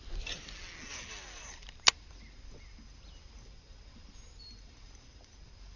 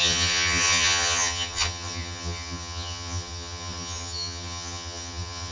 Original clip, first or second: first